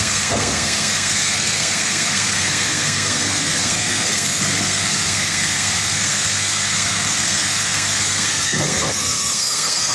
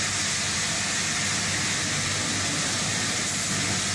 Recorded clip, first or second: second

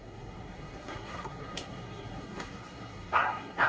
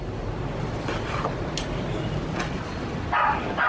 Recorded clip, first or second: second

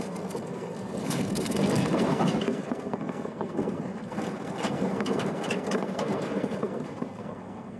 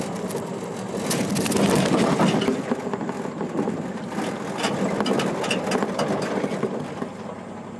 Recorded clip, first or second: second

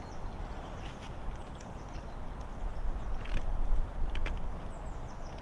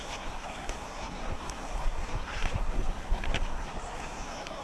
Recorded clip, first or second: first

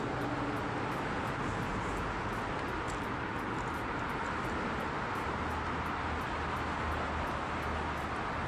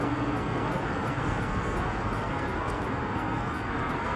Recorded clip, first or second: first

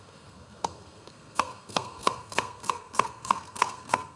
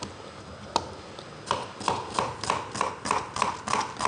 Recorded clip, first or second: second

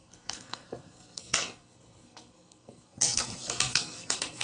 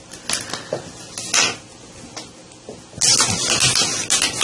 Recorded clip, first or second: second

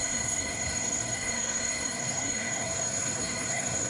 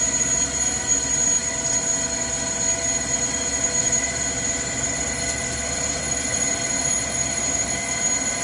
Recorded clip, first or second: second